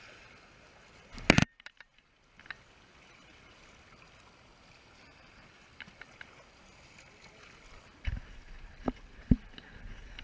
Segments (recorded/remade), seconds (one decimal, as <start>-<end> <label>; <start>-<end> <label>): 0.0-10.2 recorded